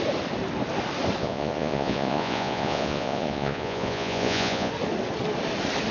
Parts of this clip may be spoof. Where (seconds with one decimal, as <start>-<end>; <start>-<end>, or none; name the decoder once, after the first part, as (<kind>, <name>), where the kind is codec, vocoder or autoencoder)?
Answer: 1.2-4.7 (vocoder, Vocos)